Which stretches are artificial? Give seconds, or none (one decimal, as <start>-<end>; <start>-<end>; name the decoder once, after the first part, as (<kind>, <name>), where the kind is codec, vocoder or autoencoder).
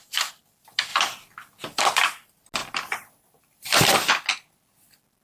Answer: none